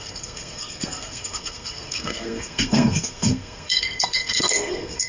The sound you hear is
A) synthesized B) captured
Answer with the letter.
A